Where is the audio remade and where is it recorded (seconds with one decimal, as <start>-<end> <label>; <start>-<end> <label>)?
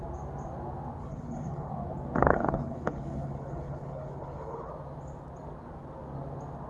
0.0-1.0 recorded; 1.0-1.7 remade; 1.7-2.2 recorded; 2.2-4.7 remade; 4.7-6.7 recorded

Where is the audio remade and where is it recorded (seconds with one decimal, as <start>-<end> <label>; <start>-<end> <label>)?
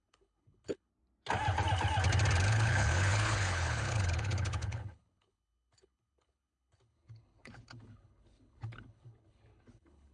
0.0-0.9 remade; 0.9-2.5 recorded; 2.5-10.1 remade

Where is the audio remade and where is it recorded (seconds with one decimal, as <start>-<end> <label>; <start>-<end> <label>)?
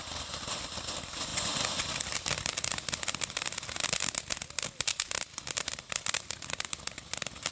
0.0-7.5 recorded